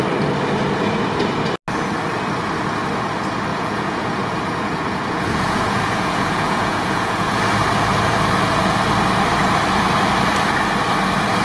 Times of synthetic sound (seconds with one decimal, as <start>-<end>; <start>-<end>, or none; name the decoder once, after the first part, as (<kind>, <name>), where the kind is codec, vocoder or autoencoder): 3.5-7.4 (vocoder, Vocos)